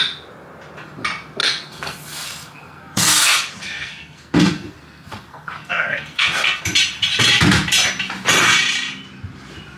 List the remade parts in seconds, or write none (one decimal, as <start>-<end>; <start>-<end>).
1.4-6.6